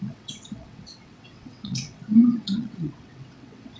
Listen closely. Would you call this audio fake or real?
fake